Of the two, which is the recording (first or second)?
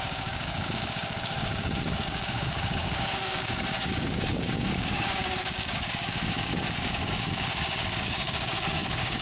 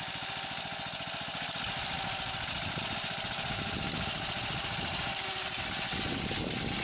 second